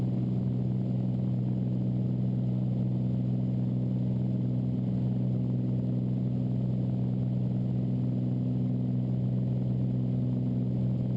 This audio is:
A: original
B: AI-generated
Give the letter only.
A